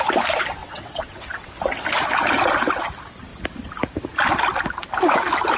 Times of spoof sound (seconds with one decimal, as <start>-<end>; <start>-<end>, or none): 0.6-1.5

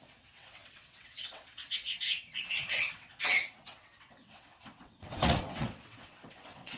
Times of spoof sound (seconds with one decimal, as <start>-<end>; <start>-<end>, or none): 0.0-6.8

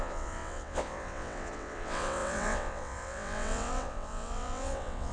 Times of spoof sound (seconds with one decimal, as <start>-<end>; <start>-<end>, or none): 0.0-5.1

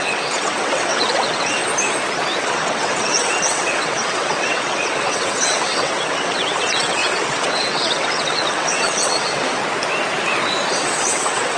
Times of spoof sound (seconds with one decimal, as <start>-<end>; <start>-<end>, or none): 0.0-1.6; 2.4-9.6; 10.7-11.6

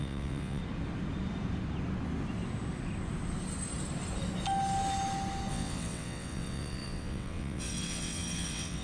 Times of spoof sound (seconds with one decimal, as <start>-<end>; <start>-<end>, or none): 0.0-0.6; 5.5-8.8

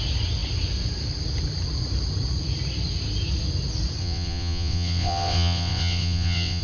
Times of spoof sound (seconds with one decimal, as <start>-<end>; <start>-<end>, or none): 4.0-6.6

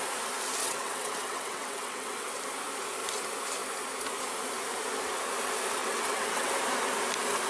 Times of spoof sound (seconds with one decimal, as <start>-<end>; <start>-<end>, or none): 0.6-2.4; 5.8-6.5

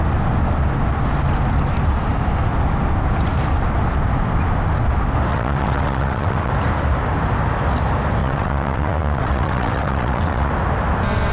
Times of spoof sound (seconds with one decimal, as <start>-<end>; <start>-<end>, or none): 5.3-6.5; 8.2-10.5